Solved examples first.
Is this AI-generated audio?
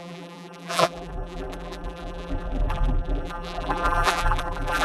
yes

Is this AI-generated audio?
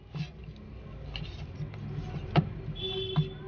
no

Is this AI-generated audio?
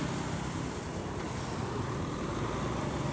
no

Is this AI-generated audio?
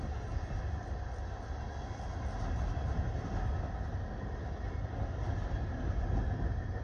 no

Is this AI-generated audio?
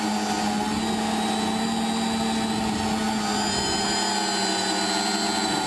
no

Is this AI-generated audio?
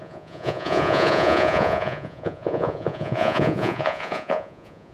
yes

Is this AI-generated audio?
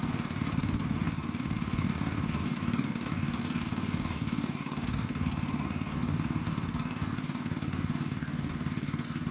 yes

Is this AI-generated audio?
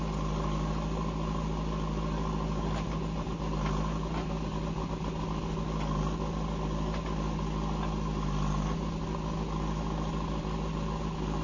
no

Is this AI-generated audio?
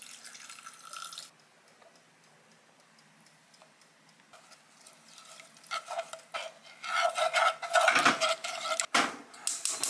no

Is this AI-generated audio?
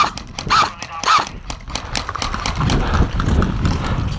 no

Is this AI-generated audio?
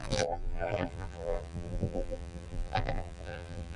yes